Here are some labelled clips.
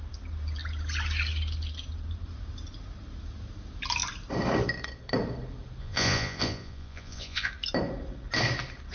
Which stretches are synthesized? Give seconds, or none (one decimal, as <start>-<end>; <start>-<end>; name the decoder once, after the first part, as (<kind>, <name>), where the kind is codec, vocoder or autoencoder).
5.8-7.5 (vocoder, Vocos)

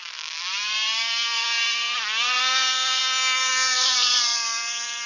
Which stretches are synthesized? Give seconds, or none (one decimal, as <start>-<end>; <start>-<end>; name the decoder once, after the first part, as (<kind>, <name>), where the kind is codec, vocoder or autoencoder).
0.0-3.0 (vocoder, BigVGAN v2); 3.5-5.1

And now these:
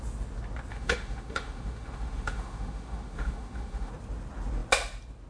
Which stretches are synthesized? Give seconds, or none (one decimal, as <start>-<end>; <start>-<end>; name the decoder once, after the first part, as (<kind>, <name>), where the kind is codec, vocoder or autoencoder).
0.7-3.9 (autoencoder, DAC-VAE)

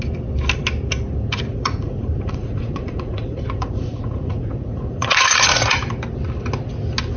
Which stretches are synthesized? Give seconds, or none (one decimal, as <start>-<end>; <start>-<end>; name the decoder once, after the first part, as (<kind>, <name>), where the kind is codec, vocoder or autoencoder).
1.5-5.8 (vocoder, Vocos)

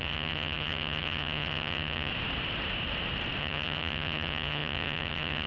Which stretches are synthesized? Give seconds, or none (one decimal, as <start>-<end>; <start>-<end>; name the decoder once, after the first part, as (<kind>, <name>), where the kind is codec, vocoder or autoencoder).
0.0-2.1 (vocoder, HiFi-GAN); 3.4-5.5

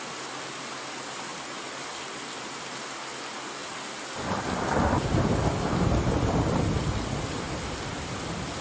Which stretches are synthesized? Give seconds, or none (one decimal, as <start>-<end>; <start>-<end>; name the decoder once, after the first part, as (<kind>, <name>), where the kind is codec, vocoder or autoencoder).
none

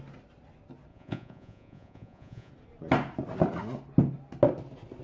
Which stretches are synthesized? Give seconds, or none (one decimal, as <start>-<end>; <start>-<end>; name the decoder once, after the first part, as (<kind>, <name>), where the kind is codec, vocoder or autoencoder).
0.9-2.5 (vocoder, Vocos)